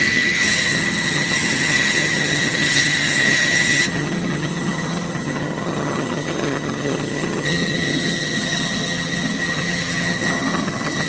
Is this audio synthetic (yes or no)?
yes